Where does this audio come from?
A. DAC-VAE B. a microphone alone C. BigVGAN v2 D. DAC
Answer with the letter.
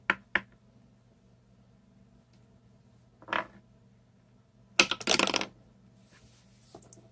B